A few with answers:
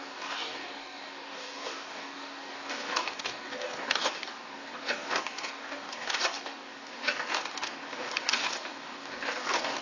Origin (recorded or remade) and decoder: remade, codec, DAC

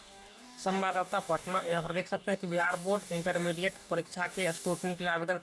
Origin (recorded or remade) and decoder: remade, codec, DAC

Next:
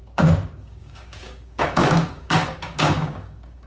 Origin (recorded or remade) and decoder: remade, codec, DAC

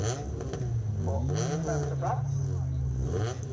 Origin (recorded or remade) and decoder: recorded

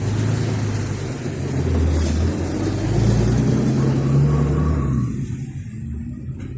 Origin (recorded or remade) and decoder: recorded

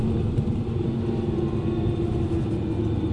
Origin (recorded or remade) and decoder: recorded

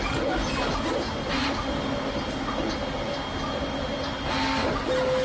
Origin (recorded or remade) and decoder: recorded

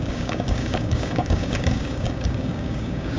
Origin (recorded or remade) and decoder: remade, codec, DAC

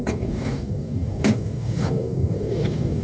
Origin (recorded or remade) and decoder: remade, codec, DAC